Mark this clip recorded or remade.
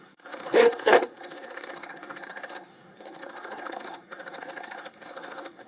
remade